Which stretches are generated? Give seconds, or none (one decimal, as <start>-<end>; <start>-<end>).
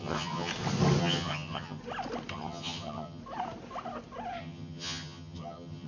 0.0-0.5; 1.0-1.8; 2.3-3.2; 4.4-5.9